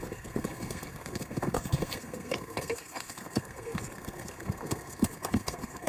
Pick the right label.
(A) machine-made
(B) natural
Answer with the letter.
A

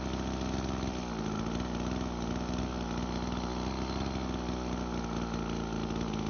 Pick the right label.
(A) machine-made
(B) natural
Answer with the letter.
B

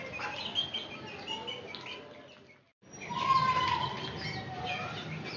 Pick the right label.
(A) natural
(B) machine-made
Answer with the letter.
A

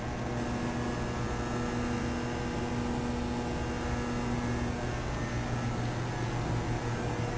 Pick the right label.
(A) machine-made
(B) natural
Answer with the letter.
B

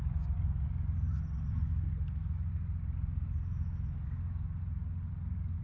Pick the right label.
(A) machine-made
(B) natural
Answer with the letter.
B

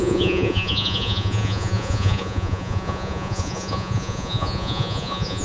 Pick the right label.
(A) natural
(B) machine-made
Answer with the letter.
B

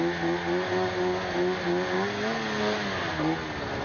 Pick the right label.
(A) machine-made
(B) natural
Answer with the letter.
B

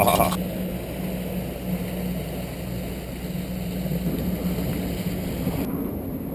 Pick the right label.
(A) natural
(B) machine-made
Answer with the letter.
A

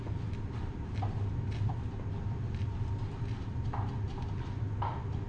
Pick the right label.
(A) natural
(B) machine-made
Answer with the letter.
A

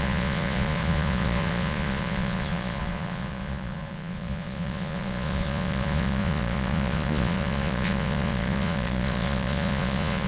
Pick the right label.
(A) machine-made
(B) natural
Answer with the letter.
A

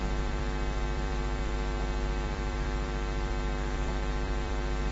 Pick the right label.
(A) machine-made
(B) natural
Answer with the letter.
A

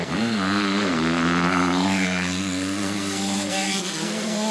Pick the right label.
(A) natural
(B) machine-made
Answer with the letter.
B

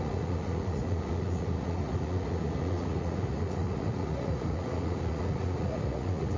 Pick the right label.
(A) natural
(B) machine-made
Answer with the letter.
B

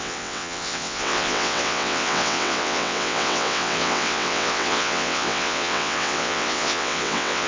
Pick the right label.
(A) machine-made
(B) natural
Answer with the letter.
A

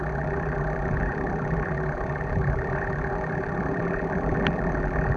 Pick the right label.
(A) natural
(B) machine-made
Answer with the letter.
B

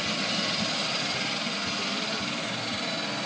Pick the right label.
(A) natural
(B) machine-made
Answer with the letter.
A